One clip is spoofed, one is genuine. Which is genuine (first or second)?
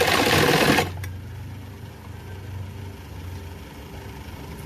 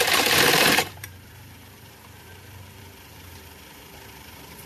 first